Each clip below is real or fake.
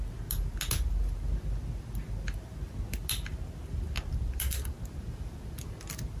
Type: real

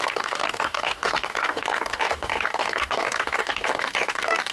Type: fake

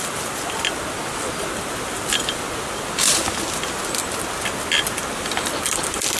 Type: real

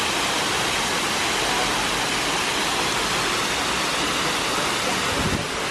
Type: real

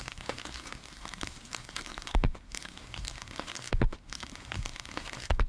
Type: fake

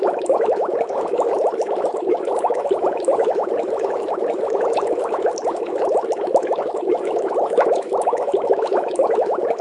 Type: fake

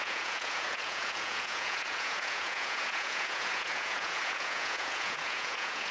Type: fake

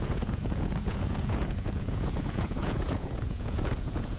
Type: fake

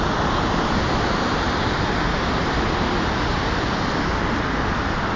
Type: real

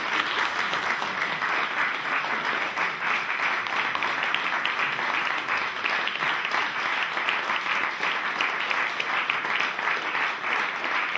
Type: real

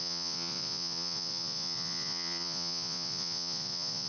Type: fake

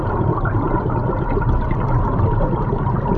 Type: real